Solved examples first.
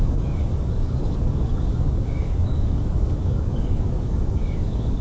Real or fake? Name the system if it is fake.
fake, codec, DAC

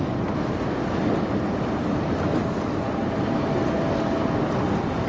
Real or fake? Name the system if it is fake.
real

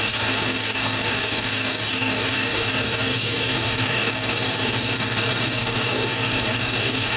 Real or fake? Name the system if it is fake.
fake, codec, DAC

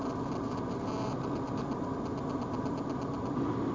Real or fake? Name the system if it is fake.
real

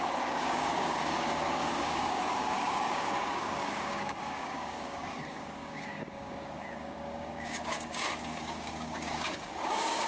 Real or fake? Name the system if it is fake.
fake, codec, DAC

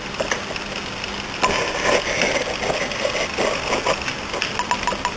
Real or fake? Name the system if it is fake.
real